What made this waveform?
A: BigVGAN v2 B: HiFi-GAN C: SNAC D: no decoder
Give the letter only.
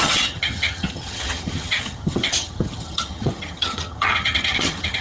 B